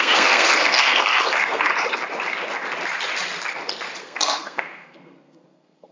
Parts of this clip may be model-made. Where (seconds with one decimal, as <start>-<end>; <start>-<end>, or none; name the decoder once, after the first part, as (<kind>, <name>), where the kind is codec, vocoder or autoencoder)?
0.0-1.7 (codec, SNAC); 4.0-5.9